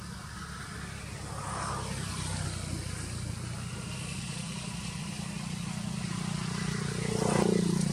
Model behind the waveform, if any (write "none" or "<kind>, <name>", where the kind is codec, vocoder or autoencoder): none